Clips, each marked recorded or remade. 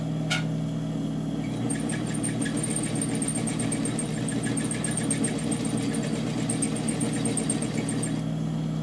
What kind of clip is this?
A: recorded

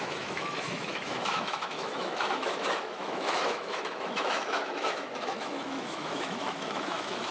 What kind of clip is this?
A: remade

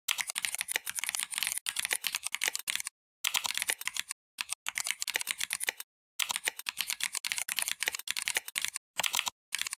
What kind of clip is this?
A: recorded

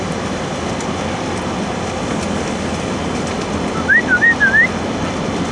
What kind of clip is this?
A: recorded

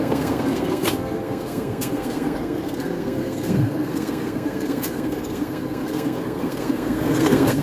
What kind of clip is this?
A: remade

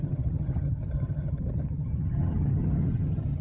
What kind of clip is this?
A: remade